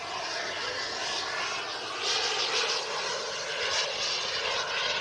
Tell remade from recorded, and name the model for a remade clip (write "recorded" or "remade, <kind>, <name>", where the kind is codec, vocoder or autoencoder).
recorded